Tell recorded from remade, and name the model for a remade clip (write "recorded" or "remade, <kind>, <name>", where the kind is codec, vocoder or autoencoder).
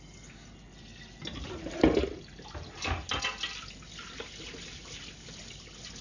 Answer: recorded